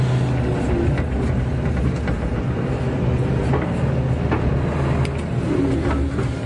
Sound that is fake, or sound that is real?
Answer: real